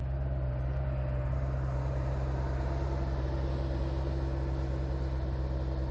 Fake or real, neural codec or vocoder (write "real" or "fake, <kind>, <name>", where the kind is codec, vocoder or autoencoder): real